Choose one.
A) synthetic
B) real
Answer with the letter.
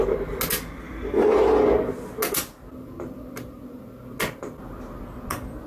B